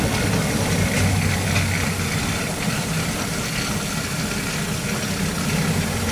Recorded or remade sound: recorded